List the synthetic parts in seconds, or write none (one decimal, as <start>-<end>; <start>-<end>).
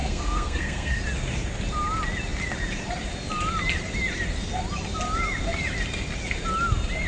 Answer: 0.0-1.0